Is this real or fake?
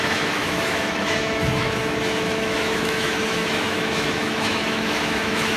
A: fake